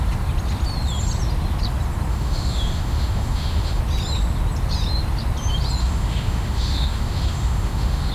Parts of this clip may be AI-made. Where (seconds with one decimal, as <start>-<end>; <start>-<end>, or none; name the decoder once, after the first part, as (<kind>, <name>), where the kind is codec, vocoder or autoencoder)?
2.1-3.8 (autoencoder, DAC-VAE); 5.8-8.1